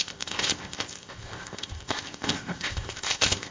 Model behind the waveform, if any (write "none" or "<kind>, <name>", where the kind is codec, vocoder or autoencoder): codec, ZipCodec